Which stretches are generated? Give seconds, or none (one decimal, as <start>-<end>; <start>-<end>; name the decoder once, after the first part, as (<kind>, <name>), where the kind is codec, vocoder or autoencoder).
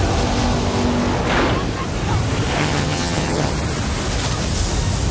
2.6-3.5 (vocoder, HiFi-GAN)